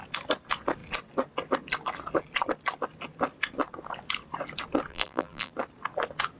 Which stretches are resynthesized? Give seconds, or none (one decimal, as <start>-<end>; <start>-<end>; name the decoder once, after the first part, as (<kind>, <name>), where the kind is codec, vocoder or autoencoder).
4.9-5.5 (vocoder, BigVGAN v2)